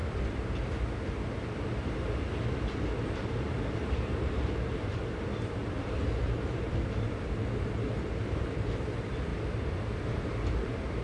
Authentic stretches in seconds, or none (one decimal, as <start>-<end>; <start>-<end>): 0.0-2.5; 9.3-10.2